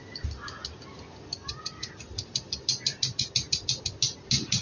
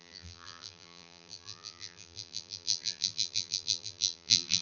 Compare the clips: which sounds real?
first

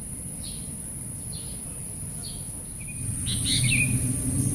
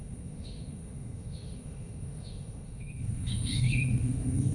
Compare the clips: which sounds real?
first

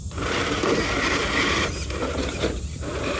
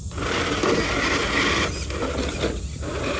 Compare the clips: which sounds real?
second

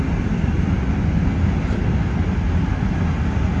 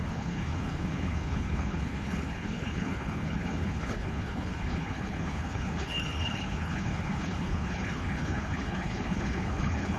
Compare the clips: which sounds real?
first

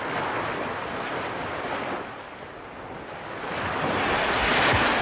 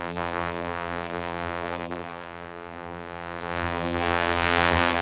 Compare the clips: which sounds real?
first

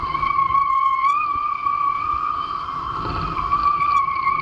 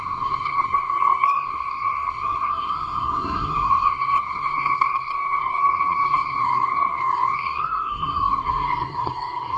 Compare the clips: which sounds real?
first